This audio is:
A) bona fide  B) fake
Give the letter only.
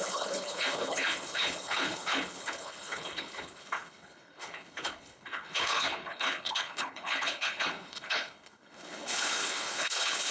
B